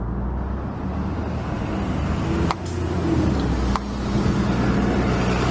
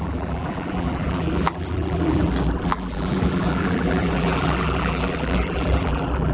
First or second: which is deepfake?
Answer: second